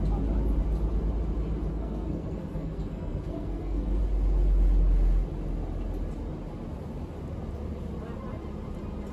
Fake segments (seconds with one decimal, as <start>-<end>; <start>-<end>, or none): 1.7-4.0